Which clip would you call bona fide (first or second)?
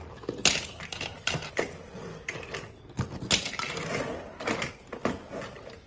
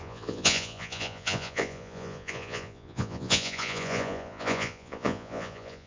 first